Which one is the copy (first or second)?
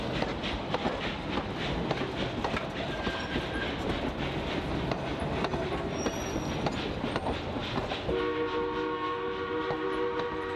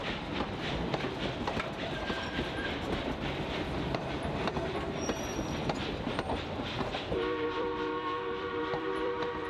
second